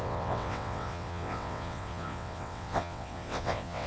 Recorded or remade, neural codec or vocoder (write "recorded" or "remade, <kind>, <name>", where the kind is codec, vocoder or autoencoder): remade, vocoder, WaveNeXt